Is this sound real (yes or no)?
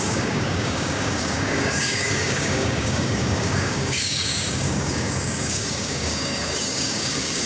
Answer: no